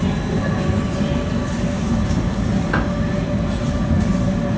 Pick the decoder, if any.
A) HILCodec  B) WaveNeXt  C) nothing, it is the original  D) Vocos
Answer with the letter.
C